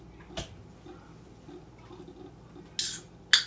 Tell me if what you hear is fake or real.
real